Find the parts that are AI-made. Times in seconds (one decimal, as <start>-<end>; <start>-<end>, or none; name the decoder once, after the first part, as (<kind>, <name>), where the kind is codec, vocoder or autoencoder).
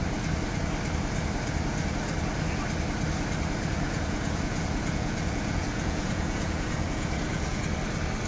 3.7-7.6 (vocoder, Vocos)